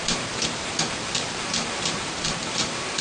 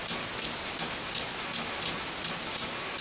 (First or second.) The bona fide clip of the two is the second